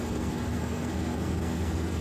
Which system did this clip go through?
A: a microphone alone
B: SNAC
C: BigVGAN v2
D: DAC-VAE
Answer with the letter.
B